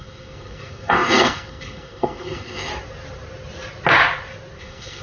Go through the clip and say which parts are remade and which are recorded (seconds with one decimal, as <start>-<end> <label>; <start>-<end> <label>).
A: 0.0-2.7 remade; 2.7-4.6 recorded; 4.6-5.0 remade